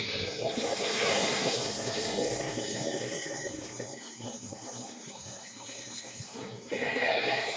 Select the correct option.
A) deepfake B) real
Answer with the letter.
A